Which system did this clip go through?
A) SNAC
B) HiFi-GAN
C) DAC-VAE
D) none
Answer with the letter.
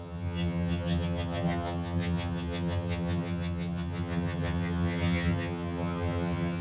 B